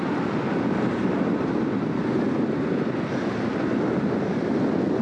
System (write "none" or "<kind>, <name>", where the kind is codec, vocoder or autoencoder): none